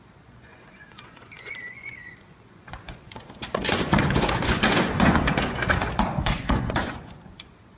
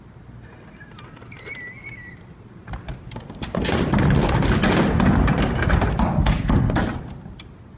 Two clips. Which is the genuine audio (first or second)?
second